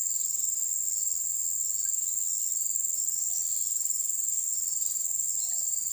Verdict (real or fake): real